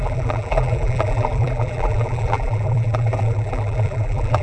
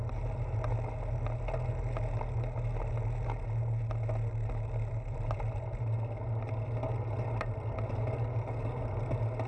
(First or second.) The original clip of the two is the second